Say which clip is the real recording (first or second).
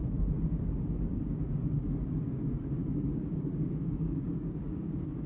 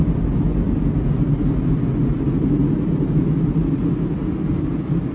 second